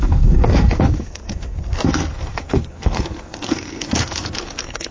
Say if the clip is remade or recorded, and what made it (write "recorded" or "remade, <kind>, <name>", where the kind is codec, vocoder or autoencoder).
remade, codec, SNAC